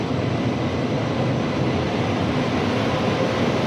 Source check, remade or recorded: recorded